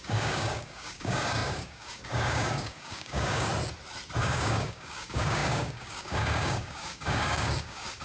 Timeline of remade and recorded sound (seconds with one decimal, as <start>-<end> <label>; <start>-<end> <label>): 0.0-3.5 remade; 3.5-4.2 recorded; 4.2-8.0 remade